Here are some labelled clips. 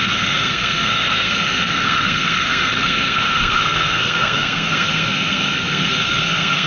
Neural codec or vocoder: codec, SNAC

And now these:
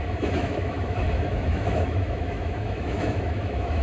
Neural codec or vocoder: autoencoder, DAC-VAE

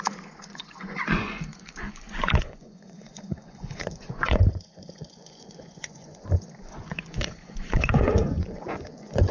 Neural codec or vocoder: vocoder, Vocos